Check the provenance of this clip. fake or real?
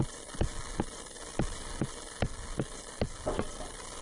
real